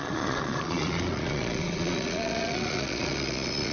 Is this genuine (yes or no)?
no